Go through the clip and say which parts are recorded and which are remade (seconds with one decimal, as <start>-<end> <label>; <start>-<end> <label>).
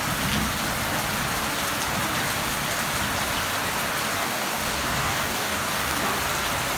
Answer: 0.0-4.2 recorded; 4.2-6.0 remade; 6.0-6.8 recorded